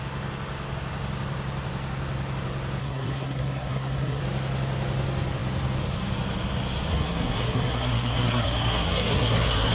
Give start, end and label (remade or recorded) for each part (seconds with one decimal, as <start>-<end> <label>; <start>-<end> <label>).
0.0-2.8 recorded; 2.8-4.2 remade; 4.2-6.9 recorded; 6.9-9.7 remade